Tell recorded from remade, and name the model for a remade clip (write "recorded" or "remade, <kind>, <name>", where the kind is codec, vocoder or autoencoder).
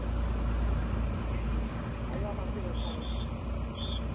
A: recorded